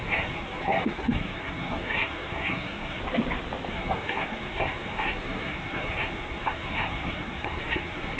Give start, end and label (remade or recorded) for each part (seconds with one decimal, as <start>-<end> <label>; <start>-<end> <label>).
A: 0.0-3.0 remade; 3.0-3.7 recorded; 3.7-8.2 remade